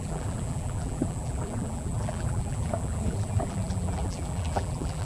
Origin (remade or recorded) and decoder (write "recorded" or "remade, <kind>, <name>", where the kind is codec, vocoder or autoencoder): remade, vocoder, BigVGAN v2